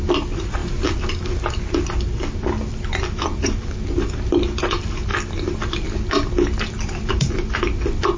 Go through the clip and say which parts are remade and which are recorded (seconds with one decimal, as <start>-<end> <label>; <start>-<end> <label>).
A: 0.0-8.2 recorded